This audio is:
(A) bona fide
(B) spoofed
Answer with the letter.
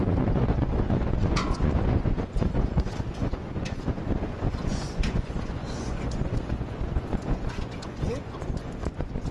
B